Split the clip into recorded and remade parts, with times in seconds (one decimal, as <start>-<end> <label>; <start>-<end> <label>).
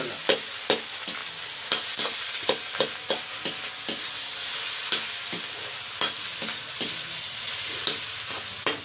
0.0-8.8 recorded